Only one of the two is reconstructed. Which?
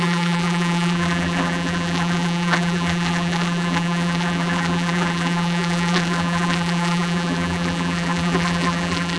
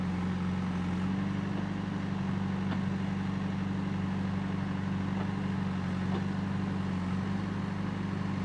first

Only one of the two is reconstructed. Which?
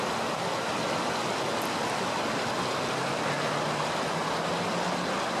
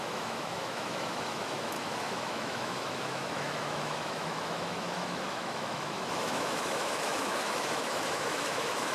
second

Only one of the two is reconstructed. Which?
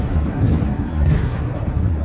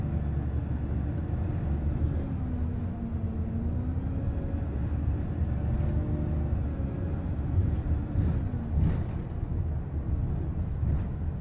first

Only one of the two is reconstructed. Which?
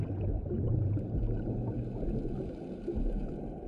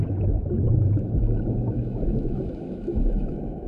second